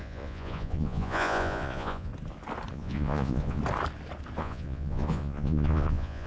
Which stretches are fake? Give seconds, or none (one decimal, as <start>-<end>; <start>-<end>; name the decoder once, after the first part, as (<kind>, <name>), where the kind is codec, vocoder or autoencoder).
0.0-2.1 (vocoder, Vocos); 2.7-3.6; 4.4-6.3